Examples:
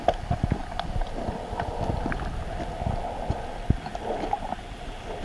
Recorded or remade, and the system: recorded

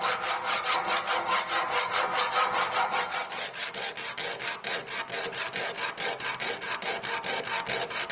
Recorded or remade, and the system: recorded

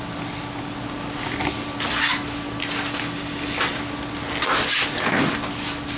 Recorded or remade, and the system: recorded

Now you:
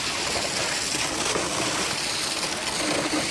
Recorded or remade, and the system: recorded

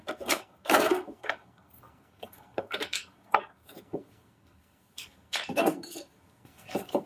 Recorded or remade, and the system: remade, codec, SNAC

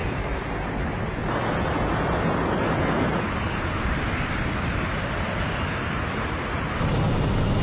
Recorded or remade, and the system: recorded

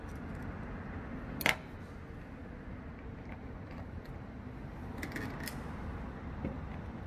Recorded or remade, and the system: recorded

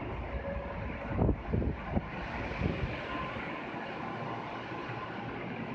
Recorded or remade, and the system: recorded